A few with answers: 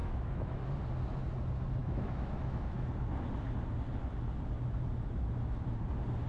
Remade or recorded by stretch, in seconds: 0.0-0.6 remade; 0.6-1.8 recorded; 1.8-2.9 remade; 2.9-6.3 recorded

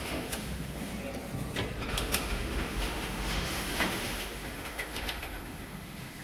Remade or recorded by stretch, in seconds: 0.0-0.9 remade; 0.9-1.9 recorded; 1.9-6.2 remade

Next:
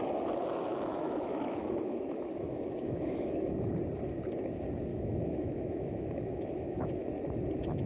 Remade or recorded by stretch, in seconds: 0.0-0.7 recorded; 0.7-3.7 remade; 3.7-4.9 recorded; 4.9-7.1 remade; 7.1-7.9 recorded

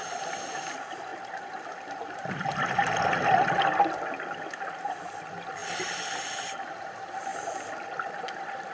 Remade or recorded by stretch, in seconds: 0.0-8.7 recorded

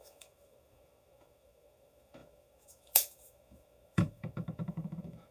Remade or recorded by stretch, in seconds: 0.0-5.3 remade